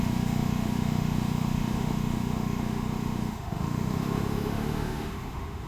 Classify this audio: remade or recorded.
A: remade